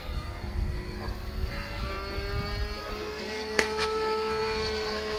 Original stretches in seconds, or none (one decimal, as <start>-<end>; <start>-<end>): 1.9-2.8